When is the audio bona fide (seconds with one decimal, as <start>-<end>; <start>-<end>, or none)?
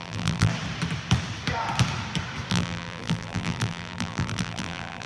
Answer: 0.5-2.5